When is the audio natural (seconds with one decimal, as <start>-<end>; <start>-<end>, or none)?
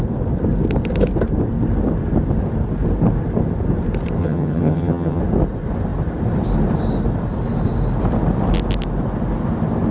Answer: 0.0-4.2; 5.2-9.9